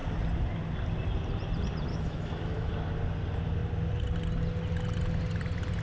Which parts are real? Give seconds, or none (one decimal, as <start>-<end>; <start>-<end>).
0.0-1.9; 2.7-5.8